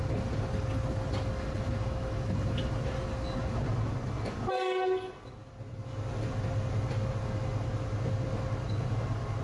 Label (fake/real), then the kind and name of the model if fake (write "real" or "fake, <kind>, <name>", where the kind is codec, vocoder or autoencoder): real